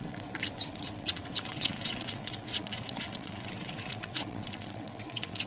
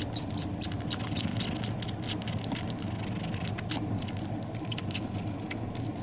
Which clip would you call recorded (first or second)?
second